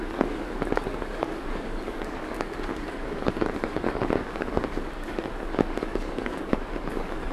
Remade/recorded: remade